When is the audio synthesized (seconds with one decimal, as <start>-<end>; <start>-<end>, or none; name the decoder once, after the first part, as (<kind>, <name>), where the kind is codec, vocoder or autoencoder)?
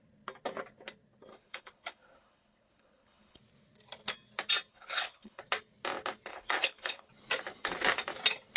1.3-3.4 (codec, HILCodec); 4.7-5.4; 6.3-7.1